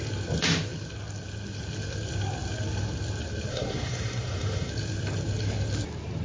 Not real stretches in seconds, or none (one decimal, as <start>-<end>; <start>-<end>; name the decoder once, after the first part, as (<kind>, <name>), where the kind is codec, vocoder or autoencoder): 3.5-4.7 (codec, SNAC)